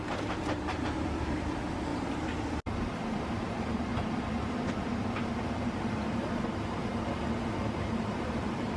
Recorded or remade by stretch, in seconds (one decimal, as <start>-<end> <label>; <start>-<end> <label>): 0.0-1.9 remade; 1.9-3.4 recorded; 3.4-3.9 remade; 3.9-4.7 recorded; 4.7-6.8 remade; 6.8-7.6 recorded; 7.6-8.8 remade